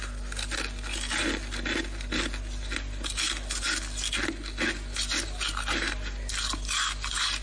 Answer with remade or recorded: recorded